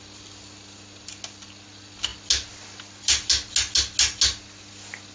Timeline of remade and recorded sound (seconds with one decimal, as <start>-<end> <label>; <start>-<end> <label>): 0.0-5.1 recorded

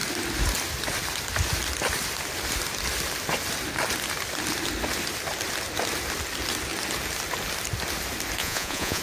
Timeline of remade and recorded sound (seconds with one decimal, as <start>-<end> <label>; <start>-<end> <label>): 0.0-8.4 recorded; 8.4-9.0 remade

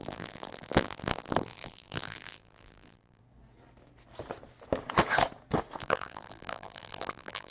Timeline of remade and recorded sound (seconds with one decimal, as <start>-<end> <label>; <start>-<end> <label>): 0.0-3.2 remade; 3.2-5.8 recorded; 5.8-7.5 remade

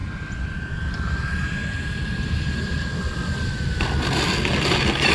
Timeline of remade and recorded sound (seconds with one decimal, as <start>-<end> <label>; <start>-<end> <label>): 0.0-5.1 recorded

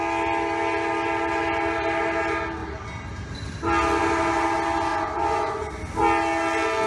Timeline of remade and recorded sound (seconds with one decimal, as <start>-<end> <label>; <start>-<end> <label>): 0.0-4.9 recorded; 4.9-5.8 remade; 5.8-6.9 recorded

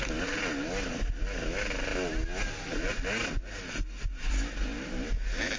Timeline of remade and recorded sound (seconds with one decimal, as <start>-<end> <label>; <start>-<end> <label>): 0.0-5.6 recorded

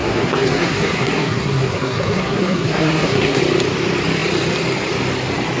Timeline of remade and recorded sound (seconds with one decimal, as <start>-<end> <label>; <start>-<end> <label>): 0.0-3.4 remade; 3.4-5.6 recorded